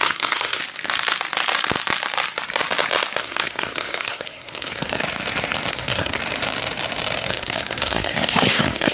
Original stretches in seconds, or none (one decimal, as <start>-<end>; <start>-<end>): 0.6-3.2; 5.0-5.7; 6.2-7.3